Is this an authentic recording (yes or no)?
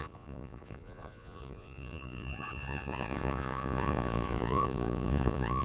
no